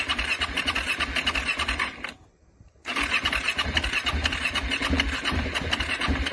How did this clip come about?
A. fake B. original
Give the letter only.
B